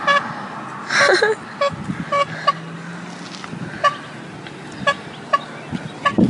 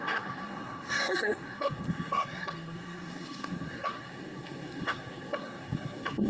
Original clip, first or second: first